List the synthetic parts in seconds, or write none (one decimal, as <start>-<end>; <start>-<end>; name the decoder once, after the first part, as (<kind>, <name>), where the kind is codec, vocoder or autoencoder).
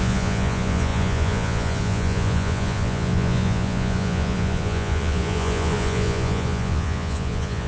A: 0.0-7.7 (vocoder, Vocos)